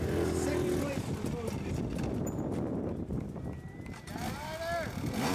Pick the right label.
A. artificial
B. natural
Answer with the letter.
B